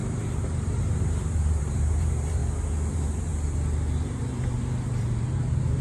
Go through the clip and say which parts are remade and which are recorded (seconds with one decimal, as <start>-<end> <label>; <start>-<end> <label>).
0.0-2.4 remade; 2.4-2.9 recorded; 2.9-3.3 remade; 3.3-4.2 recorded; 4.2-5.8 remade